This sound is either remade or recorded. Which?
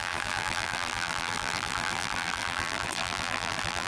remade